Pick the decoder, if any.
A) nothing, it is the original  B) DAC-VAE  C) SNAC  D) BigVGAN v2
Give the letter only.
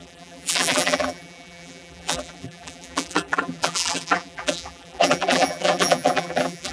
D